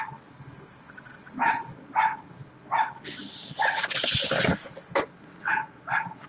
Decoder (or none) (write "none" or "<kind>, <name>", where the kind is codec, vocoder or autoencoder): none